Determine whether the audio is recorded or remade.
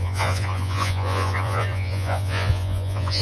remade